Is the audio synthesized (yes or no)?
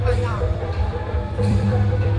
yes